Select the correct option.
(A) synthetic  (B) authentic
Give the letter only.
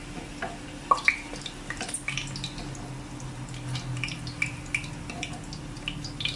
B